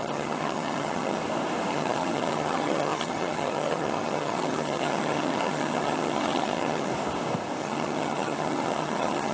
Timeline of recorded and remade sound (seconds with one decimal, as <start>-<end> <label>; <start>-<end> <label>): 0.0-1.2 remade; 1.2-1.7 recorded; 1.7-6.9 remade; 6.9-7.6 recorded; 7.6-9.3 remade